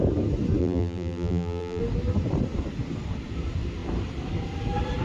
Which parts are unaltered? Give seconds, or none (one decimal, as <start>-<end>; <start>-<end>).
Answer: 0.0-0.6; 1.8-5.0